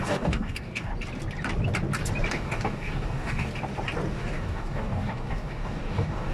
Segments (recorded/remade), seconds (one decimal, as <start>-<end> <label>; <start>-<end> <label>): 0.0-0.9 remade; 0.9-2.3 recorded; 2.3-3.5 remade; 3.5-4.1 recorded; 4.1-6.3 remade